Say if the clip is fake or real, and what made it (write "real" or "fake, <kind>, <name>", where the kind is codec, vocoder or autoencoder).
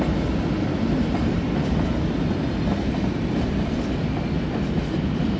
real